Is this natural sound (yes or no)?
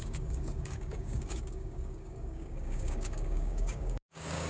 no